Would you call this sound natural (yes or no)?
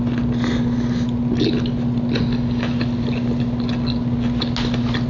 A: yes